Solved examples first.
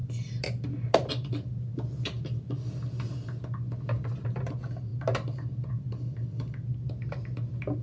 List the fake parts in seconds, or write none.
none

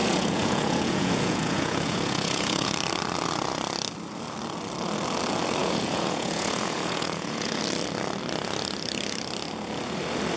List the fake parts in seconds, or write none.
0.0-2.7; 5.6-7.6

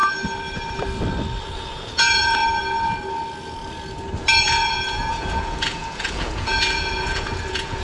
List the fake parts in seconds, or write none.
1.4-2.4; 4.4-7.8

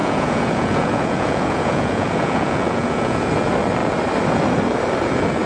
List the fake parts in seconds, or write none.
0.0-3.3

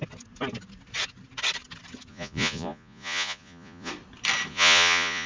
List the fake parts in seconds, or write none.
2.1-3.9; 4.5-5.3

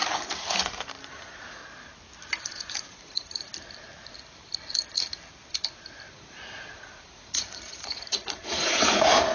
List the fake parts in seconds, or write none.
1.1-1.6; 2.4-3.5; 6.1-9.3

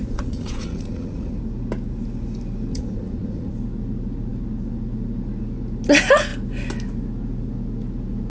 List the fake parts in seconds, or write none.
0.0-1.4; 2.7-3.5

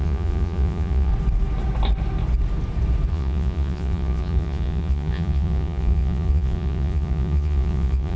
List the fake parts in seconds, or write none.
0.0-1.1; 3.1-8.2